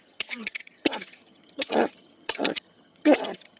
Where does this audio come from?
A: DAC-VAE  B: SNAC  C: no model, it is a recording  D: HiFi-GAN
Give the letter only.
D